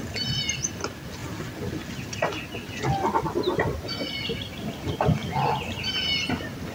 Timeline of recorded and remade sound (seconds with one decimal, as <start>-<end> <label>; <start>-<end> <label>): 0.0-6.7 recorded